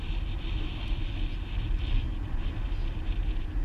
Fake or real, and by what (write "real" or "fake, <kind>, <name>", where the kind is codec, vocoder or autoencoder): real